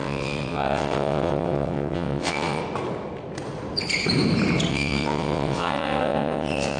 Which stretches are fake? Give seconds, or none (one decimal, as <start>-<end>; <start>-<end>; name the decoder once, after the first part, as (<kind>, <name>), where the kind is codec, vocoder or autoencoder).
0.0-2.6 (vocoder, WaveNeXt); 4.7-6.8